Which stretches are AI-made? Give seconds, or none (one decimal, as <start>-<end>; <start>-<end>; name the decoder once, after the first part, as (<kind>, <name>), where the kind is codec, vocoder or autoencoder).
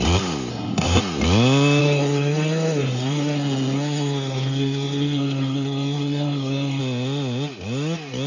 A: 0.5-1.0 (codec, SNAC); 1.8-6.8